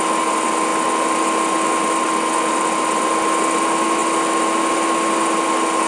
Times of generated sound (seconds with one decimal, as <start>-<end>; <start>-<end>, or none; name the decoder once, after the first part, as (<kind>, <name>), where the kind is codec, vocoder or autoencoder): none